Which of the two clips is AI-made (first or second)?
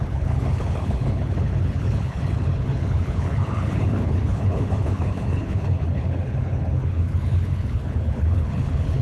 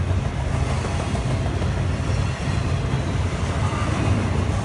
first